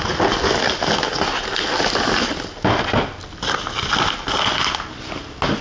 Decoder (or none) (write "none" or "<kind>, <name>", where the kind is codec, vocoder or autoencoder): none